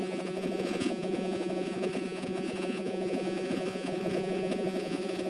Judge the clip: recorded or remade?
remade